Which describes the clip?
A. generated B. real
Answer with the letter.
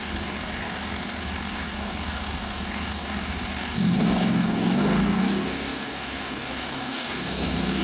A